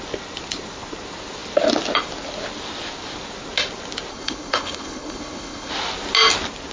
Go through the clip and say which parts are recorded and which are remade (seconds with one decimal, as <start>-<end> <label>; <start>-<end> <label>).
0.0-4.1 recorded; 4.1-5.7 remade; 5.7-6.7 recorded